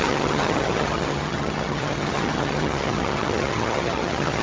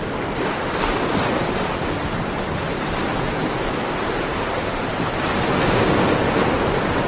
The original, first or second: second